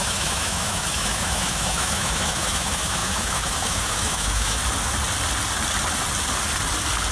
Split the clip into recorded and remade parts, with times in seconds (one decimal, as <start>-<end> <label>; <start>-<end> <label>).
0.0-4.6 remade; 4.6-7.1 recorded